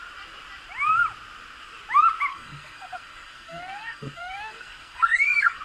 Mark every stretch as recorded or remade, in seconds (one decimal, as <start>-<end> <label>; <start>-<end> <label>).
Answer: 0.0-2.3 recorded; 2.3-5.6 remade